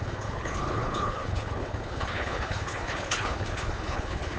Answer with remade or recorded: remade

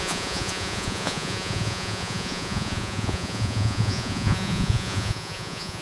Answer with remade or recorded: remade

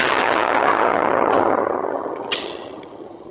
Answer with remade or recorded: remade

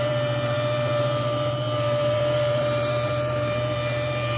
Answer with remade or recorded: remade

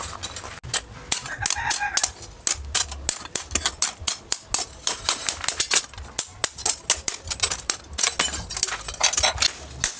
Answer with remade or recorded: recorded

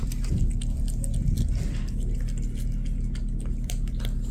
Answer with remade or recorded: remade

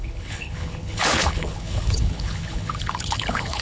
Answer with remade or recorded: remade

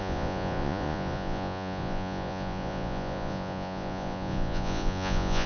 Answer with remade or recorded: remade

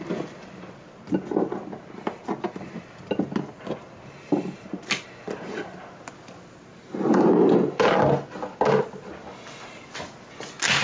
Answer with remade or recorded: recorded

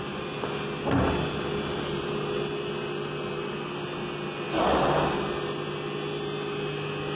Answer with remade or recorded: recorded